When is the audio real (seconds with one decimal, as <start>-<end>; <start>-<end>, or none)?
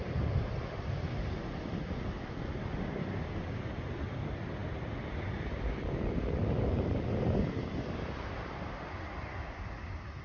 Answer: 0.0-10.2